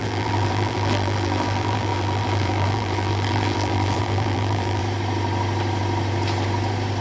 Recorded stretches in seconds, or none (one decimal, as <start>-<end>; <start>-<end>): 4.8-7.0